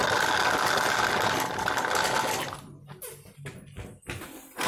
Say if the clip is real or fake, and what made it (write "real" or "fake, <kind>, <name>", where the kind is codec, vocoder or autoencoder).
real